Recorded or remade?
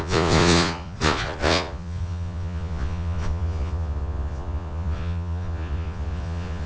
remade